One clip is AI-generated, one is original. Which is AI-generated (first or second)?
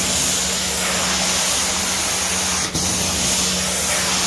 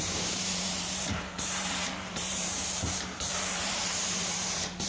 second